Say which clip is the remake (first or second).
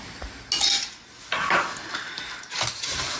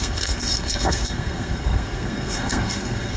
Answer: second